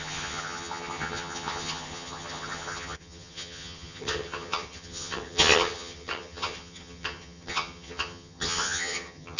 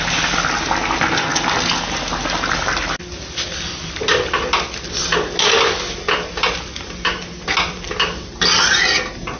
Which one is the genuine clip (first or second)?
second